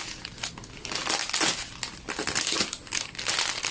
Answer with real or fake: real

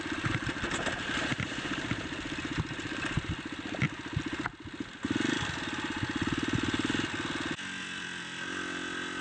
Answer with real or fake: real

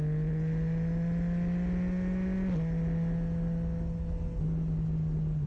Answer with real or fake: real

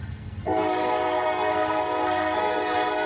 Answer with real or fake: fake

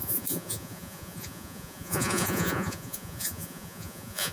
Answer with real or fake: fake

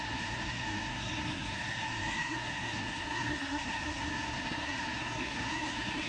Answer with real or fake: fake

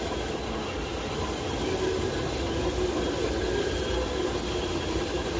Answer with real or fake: real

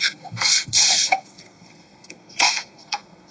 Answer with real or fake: fake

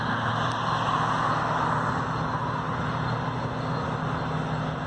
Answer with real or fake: real